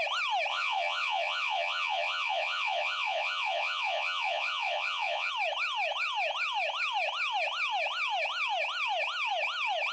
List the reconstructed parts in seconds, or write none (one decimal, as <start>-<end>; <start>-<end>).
0.5-5.3